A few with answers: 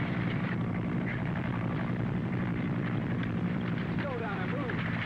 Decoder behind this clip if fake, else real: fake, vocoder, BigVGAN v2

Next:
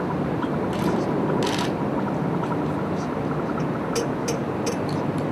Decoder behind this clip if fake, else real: real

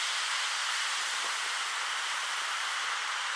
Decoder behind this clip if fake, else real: real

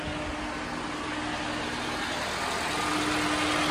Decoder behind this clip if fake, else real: real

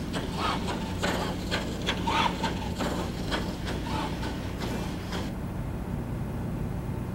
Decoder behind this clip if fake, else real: real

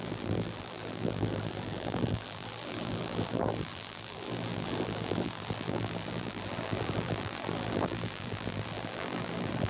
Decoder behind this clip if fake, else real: fake, vocoder, BigVGAN v2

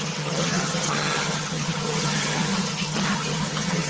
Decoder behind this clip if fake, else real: fake, vocoder, HiFi-GAN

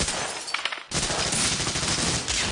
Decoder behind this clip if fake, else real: real